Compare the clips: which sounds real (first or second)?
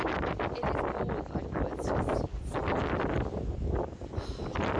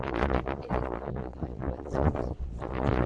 first